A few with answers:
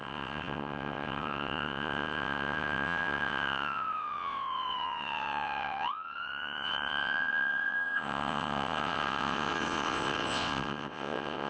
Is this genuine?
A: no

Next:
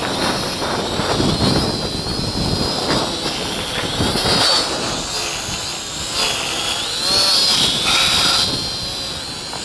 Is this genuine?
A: yes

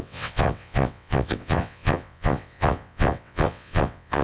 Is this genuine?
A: no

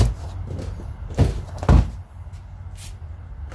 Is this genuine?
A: yes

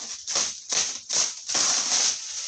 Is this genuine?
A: yes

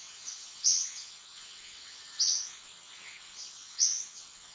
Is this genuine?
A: no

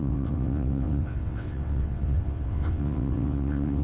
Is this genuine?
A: no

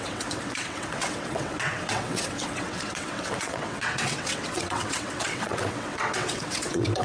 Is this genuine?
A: no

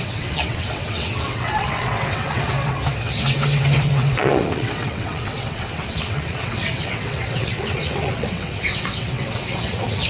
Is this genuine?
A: no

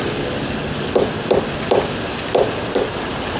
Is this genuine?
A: yes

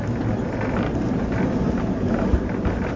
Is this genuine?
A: yes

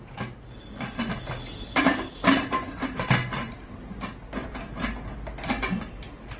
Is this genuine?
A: yes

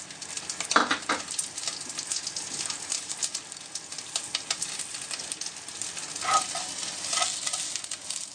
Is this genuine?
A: yes